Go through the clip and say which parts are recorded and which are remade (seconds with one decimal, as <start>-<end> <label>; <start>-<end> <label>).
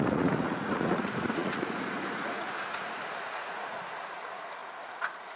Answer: 0.0-5.4 remade